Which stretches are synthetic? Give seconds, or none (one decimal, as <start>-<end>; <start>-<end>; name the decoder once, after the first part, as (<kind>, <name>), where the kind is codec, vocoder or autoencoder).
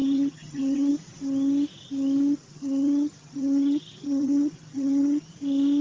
0.0-0.9 (vocoder, HiFi-GAN); 2.5-5.3